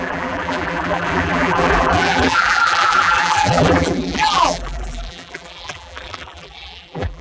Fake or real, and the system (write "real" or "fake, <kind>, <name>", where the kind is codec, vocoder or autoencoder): fake, vocoder, BigVGAN v2